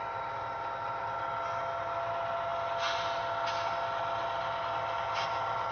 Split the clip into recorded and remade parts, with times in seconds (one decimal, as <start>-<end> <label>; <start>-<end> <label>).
0.0-5.7 recorded